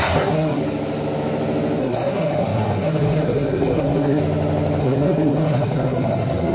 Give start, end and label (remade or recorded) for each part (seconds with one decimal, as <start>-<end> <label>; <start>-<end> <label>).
0.0-0.6 remade; 0.6-1.8 recorded; 1.8-4.2 remade; 4.2-4.8 recorded; 4.8-6.5 remade